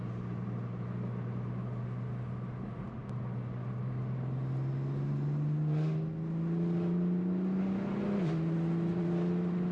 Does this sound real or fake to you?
real